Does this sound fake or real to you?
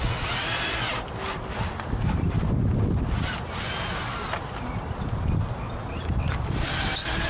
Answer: real